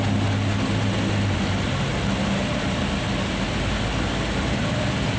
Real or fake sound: real